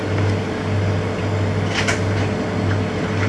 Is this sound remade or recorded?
recorded